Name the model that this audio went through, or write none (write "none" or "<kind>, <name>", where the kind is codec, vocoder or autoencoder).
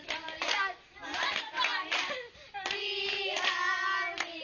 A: none